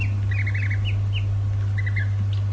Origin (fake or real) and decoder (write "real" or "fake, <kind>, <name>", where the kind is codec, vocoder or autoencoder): real